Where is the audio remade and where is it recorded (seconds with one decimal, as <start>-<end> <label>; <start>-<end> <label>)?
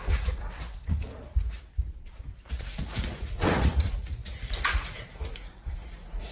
0.0-1.3 remade; 1.3-2.5 recorded; 2.5-6.3 remade